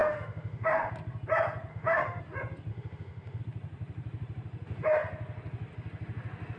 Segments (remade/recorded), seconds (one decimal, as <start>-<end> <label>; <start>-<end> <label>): 0.0-0.9 remade; 0.9-1.7 recorded; 1.7-2.2 remade; 2.2-2.7 recorded; 2.7-3.4 remade; 3.4-6.6 recorded